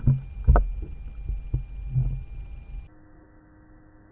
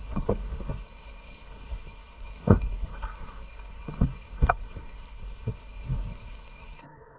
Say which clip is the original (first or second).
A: first